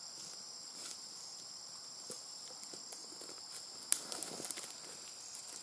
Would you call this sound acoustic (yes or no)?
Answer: yes